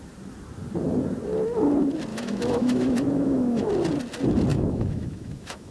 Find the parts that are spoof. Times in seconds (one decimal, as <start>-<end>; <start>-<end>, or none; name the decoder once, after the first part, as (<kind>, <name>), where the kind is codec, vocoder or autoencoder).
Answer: 2.1-3.7 (autoencoder, DAC-VAE); 4.5-5.7